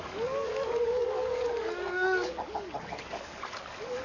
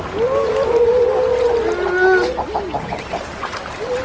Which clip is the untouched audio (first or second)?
second